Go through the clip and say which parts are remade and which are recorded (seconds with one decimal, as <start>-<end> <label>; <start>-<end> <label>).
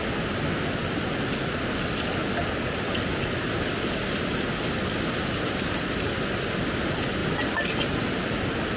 0.0-2.2 recorded; 2.2-4.3 remade; 4.3-7.2 recorded; 7.2-8.8 remade